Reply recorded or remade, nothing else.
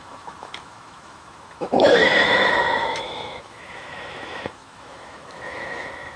remade